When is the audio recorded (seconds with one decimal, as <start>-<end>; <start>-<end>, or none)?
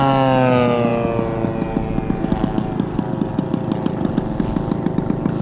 0.0-5.4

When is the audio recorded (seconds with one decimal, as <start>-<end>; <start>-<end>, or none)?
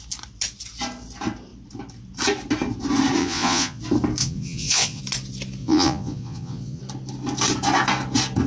0.0-3.2; 3.8-4.2; 5.0-5.6; 6.8-8.5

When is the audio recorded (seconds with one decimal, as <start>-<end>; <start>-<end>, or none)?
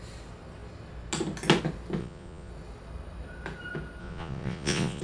0.0-2.0; 2.5-4.0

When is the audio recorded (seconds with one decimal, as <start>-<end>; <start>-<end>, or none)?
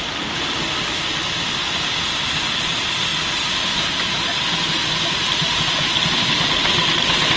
0.0-7.4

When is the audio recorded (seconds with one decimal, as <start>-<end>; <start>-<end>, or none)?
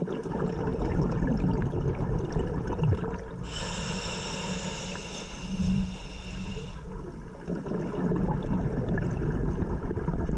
0.0-10.4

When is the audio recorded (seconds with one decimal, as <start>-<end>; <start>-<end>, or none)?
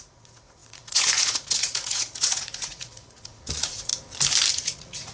3.9-4.5